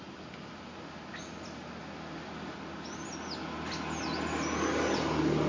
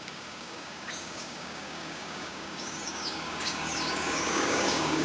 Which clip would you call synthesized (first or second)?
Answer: second